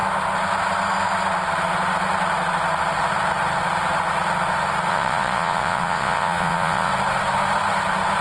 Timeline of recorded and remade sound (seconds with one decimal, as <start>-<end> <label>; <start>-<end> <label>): 0.0-4.9 recorded; 4.9-6.9 remade; 6.9-8.2 recorded